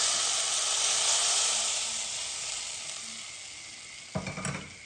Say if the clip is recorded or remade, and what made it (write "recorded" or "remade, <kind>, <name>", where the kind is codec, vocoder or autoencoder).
recorded